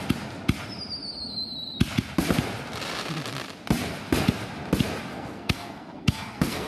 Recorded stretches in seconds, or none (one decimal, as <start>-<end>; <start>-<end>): 0.0-5.1